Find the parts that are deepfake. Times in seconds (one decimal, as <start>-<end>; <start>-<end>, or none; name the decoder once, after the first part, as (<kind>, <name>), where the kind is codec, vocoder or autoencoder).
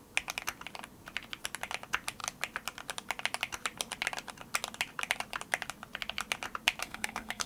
6.8-7.5 (codec, SNAC)